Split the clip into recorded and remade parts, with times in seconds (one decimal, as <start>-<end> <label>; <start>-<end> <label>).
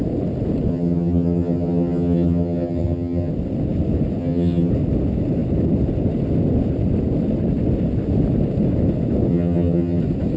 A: 0.0-0.7 recorded; 0.7-3.3 remade; 3.3-4.2 recorded; 4.2-4.7 remade; 4.7-9.3 recorded; 9.3-10.0 remade; 10.0-10.4 recorded